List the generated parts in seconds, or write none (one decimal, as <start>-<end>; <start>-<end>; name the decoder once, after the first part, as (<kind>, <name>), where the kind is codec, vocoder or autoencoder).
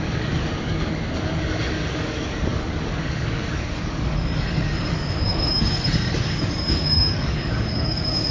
0.0-8.3 (codec, DAC)